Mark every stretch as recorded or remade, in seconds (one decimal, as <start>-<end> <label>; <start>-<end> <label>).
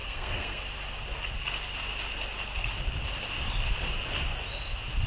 0.0-0.6 remade; 0.6-5.1 recorded